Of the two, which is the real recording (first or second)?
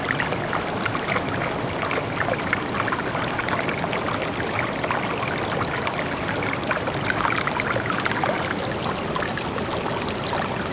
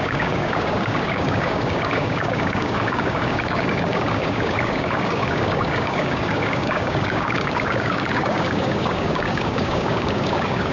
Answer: first